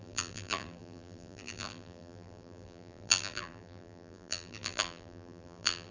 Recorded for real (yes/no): no